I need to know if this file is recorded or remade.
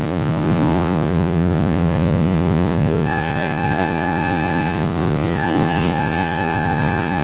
remade